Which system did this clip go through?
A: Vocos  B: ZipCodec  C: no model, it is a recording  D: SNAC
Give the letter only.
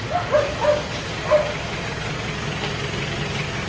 C